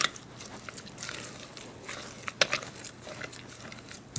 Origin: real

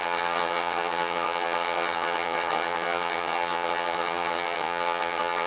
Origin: fake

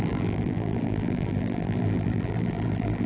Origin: fake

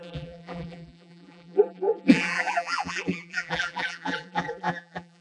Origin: fake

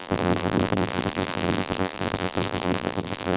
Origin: fake